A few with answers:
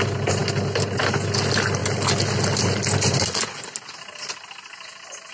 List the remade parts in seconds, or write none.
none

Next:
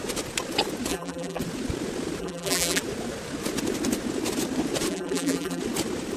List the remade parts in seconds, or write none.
0.9-1.4 (vocoder, BigVGAN v2); 2.2-2.8; 4.9-5.6

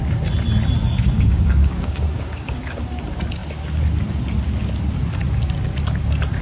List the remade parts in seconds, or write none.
0.8-2.6 (codec, DAC)

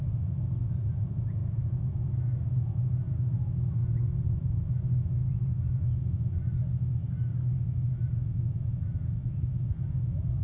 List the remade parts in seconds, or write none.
1.4-1.9 (vocoder, Vocos); 3.8-4.6; 5.2-5.8

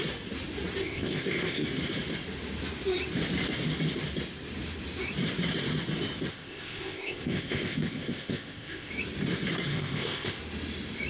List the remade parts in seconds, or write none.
0.8-1.7 (codec, ZipCodec); 6.3-8.9; 9.7-10.4

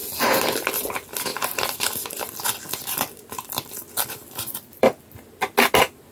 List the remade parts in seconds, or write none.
1.3-5.0 (vocoder, BigVGAN v2)

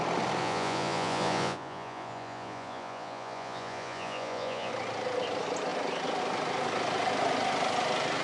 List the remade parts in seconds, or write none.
0.4-4.7 (vocoder, Vocos)